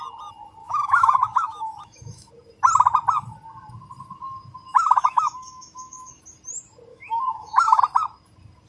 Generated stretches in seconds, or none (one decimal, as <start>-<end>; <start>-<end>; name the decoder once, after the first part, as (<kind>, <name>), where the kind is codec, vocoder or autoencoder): 0.6-2.3 (autoencoder, DAC-VAE); 4.7-6.2; 6.9-7.8